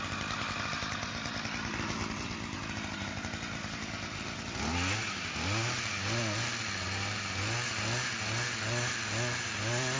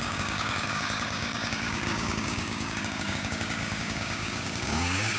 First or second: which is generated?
second